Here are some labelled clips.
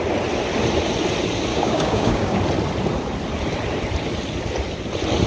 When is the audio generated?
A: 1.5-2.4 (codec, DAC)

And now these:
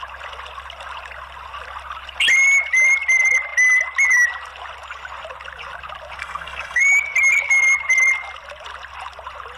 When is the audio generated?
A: 6.2-6.8 (codec, SNAC)

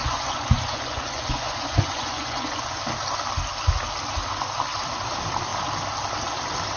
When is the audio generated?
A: 0.0-2.8 (vocoder, Vocos)

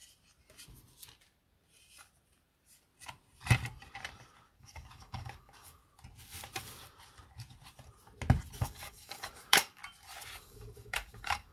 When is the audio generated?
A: 4.6-5.8 (codec, DAC); 8.6-9.8; 10.4-11.5

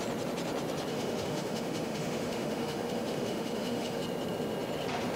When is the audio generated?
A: 0.9-4.0 (autoencoder, DAC-VAE)

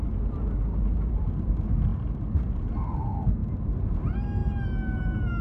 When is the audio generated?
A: 1.0-1.5 (vocoder, BigVGAN v2); 3.4-4.0

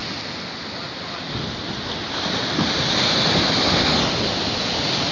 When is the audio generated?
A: none